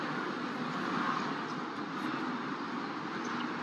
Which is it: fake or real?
real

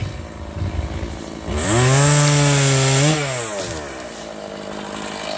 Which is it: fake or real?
real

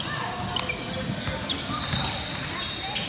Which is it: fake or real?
real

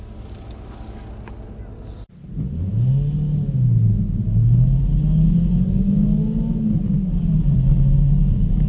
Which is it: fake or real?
real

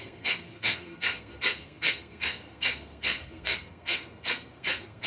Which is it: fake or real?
fake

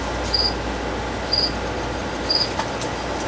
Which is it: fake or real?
real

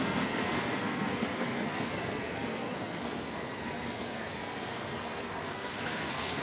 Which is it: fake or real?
fake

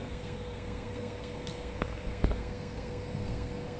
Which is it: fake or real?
fake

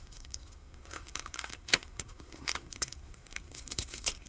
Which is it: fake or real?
fake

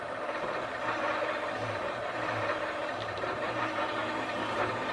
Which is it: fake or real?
real